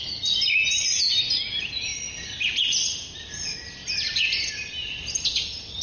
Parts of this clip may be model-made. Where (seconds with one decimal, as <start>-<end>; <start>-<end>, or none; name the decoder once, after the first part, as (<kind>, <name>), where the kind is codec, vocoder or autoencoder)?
none